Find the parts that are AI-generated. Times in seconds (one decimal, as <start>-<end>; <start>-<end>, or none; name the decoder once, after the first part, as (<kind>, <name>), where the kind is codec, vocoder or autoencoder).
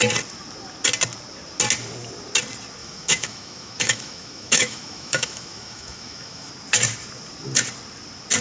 2.8-6.5 (autoencoder, DAC-VAE)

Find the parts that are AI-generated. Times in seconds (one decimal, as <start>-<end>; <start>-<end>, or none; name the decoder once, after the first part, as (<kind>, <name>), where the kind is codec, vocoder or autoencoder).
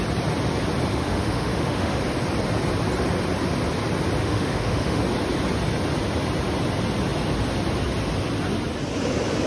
0.9-2.0 (autoencoder, DAC-VAE); 4.2-5.0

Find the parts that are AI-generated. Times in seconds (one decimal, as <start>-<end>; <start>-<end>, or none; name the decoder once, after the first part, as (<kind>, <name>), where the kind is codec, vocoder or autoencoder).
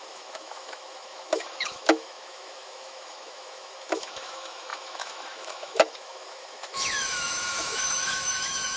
0.0-8.8 (autoencoder, DAC-VAE)